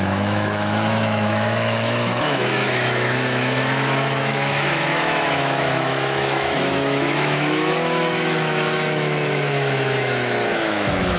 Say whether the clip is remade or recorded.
remade